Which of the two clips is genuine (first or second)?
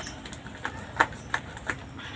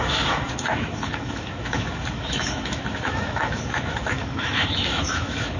first